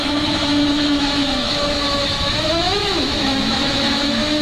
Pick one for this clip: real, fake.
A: fake